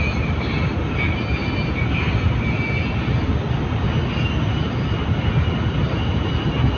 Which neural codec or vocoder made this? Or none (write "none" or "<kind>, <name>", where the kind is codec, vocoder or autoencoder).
none